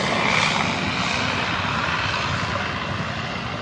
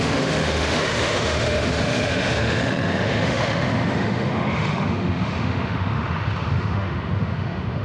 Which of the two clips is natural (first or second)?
first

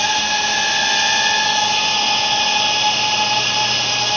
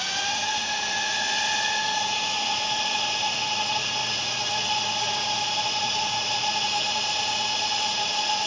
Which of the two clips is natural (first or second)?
first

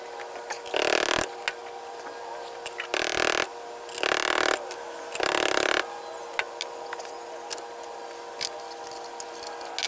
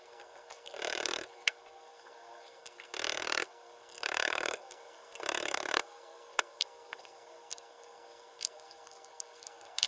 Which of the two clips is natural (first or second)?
first